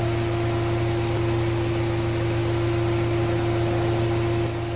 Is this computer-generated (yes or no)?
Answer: no